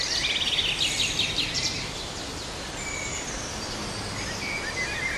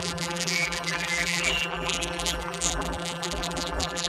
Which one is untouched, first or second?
first